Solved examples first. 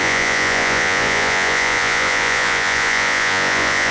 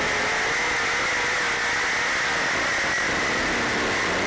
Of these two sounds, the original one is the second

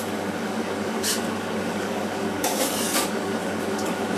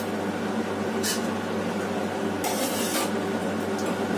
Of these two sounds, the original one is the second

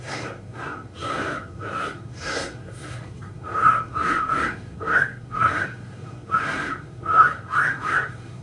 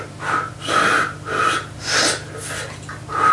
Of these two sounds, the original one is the second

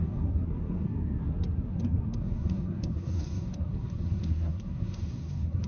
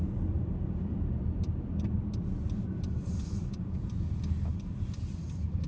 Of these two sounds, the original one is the second